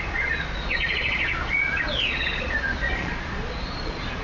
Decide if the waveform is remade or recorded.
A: remade